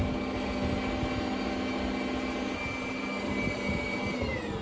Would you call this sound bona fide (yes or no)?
yes